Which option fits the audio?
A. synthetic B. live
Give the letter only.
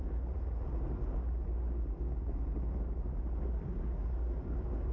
B